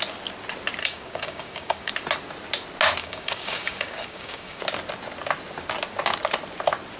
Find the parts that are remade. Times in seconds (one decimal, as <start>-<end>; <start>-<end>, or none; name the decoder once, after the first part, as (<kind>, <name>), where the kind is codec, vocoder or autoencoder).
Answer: 0.8-1.9 (codec, DAC); 3.0-4.6